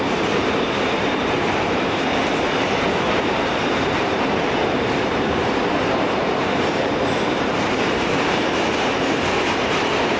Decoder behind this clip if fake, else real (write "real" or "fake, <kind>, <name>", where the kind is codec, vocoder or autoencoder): fake, vocoder, BigVGAN v2